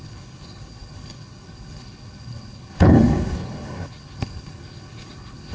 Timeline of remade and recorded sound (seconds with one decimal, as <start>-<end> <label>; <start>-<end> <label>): 0.0-5.5 remade